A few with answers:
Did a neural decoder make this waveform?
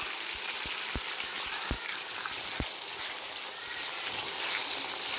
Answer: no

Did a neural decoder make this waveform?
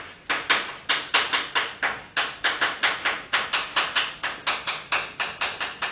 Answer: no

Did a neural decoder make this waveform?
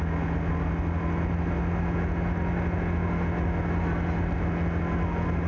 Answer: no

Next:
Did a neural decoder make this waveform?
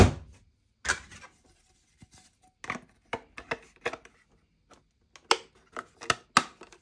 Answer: no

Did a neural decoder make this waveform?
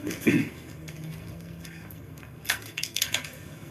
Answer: yes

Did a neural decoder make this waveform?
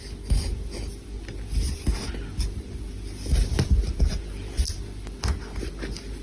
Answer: no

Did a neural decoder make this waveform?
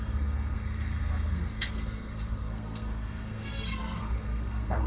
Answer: yes